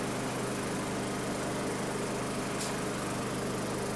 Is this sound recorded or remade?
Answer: recorded